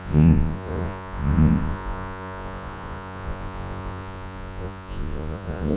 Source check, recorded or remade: remade